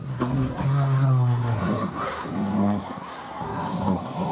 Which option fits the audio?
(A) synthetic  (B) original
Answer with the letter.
A